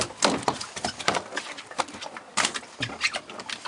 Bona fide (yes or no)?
no